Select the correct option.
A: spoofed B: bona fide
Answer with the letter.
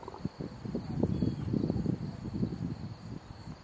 B